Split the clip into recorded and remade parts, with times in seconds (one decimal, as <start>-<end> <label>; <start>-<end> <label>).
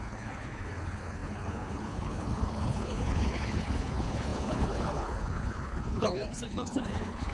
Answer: 0.0-7.3 remade